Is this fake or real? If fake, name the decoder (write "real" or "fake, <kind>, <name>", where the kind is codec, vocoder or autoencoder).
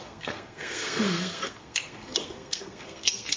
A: fake, codec, SNAC